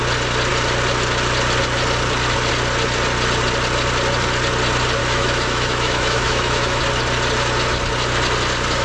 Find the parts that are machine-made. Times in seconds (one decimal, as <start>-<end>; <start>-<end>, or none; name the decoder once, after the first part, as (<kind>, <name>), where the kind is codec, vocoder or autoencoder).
5.0-6.8 (autoencoder, DAC-VAE)